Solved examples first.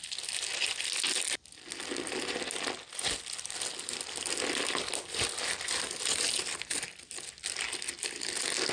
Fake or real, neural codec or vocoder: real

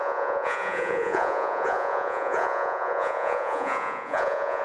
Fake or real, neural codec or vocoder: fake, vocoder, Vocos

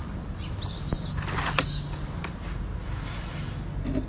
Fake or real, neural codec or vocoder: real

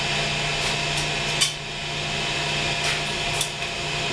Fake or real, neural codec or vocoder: real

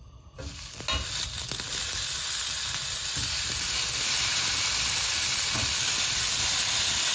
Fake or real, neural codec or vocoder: real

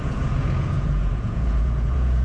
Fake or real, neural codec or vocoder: fake, vocoder, Vocos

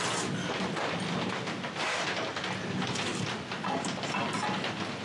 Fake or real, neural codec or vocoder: real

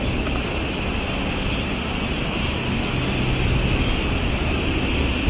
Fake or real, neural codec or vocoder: real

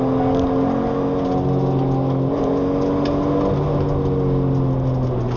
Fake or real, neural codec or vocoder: real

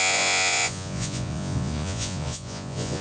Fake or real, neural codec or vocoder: fake, vocoder, Vocos